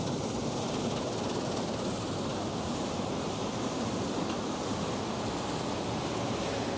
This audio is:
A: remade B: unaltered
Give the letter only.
B